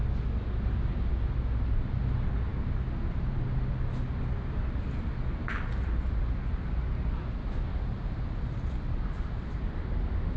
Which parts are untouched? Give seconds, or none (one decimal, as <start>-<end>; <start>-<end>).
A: 0.0-10.4